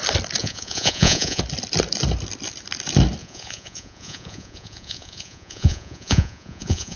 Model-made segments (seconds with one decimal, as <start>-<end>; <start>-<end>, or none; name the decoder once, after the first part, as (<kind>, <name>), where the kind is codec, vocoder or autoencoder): 0.4-1.4 (vocoder, Vocos); 3.2-7.0